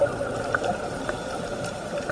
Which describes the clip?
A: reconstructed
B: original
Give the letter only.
B